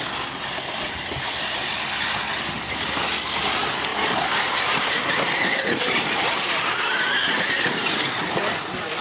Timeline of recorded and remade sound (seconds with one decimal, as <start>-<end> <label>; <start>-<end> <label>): 0.0-9.0 recorded